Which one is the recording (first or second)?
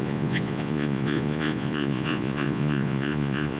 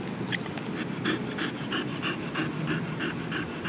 second